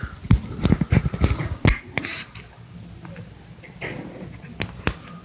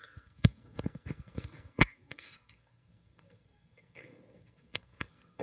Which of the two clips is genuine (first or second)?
first